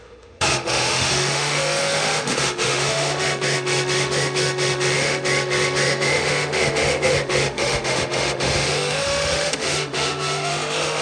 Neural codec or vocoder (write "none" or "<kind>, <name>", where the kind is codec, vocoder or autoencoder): autoencoder, DAC-VAE